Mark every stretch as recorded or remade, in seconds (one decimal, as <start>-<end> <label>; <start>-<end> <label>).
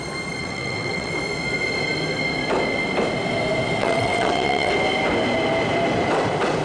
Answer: 0.0-0.4 recorded; 0.4-1.1 remade; 1.1-3.8 recorded; 3.8-4.7 remade; 4.7-6.6 recorded